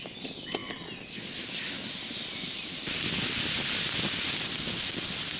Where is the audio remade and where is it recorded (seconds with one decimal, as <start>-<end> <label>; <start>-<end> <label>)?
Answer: 0.0-5.4 recorded